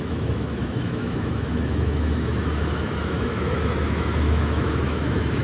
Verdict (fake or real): fake